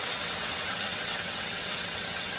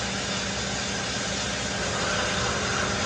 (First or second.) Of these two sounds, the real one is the second